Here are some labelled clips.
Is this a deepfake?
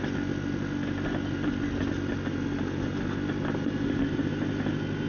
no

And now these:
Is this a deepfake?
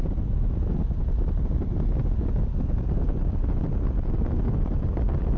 no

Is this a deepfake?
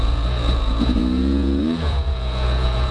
yes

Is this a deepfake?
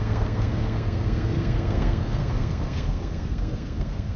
yes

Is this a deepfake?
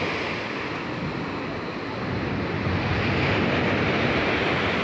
no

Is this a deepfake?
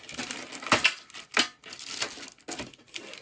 no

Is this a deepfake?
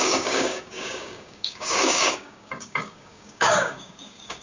yes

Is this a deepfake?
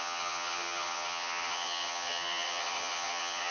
yes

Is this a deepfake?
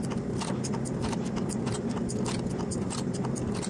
no